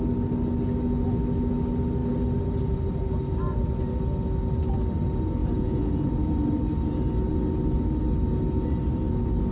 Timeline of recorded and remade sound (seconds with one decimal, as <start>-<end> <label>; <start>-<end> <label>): 0.0-5.4 recorded; 5.4-6.2 remade; 6.2-9.5 recorded